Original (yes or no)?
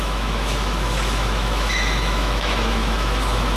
no